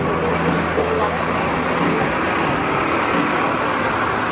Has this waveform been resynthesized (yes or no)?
no